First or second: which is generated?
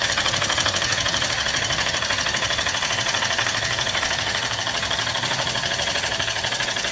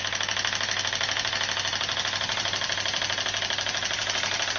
first